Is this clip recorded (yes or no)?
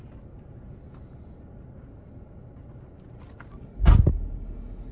yes